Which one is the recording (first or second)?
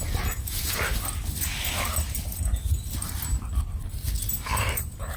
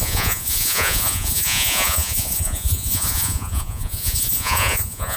first